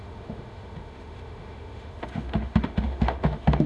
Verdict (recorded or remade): remade